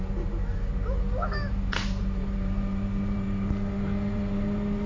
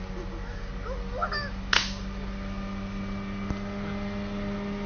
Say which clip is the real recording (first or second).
second